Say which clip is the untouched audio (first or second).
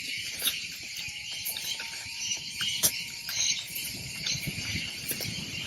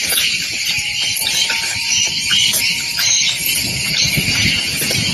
second